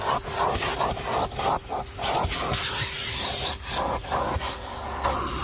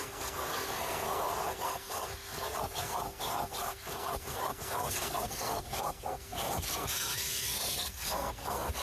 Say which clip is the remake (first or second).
second